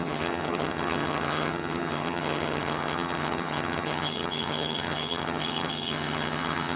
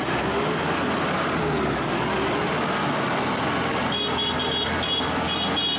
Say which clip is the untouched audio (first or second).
second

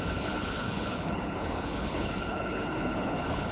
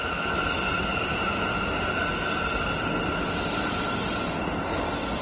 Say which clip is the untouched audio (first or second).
second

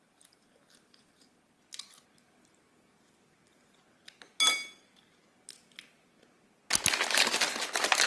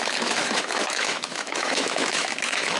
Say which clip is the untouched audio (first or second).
first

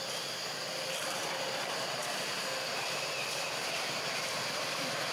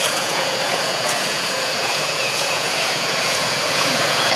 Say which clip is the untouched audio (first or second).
first